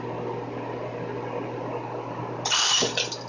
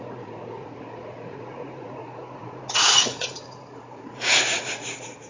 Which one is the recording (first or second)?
first